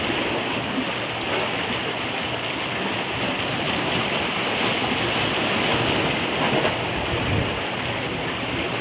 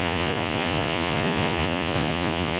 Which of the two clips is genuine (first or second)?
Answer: first